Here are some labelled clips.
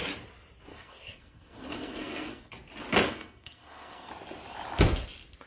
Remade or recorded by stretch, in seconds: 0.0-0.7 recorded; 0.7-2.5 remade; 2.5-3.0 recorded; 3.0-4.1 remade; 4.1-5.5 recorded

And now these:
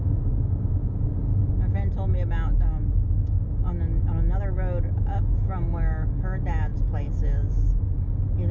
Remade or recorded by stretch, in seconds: 0.0-8.5 recorded

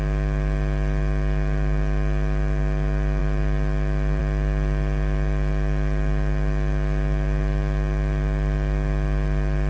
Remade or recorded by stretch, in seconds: 0.0-9.7 recorded

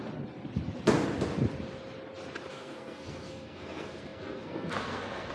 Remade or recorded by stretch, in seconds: 0.0-2.5 recorded; 2.5-5.3 remade

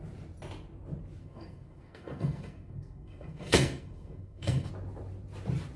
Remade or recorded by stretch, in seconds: 0.0-1.2 recorded; 1.2-4.7 remade; 4.7-5.8 recorded